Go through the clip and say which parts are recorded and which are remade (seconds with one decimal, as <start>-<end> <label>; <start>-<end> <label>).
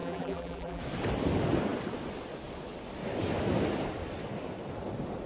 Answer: 0.0-0.8 remade; 0.8-5.3 recorded